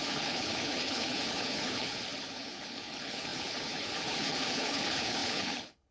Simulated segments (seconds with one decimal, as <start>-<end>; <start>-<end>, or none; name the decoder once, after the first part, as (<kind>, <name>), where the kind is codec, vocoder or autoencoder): 0.0-5.9 (codec, HILCodec)